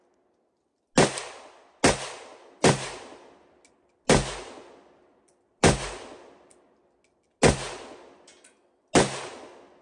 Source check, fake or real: real